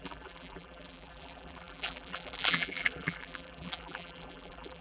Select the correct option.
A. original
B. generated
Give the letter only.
B